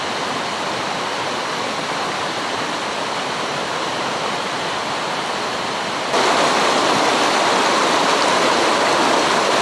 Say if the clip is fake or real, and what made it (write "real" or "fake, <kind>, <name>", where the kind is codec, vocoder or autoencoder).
real